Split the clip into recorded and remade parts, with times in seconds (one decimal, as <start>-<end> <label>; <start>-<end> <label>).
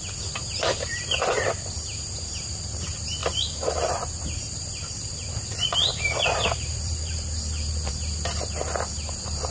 0.0-3.2 recorded; 3.2-7.9 remade; 7.9-9.5 recorded